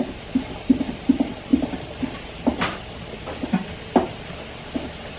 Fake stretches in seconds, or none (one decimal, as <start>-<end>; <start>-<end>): none